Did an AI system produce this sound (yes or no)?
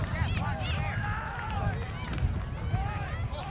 no